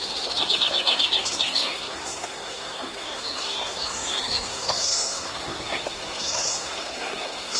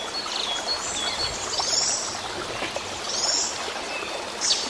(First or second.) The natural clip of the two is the second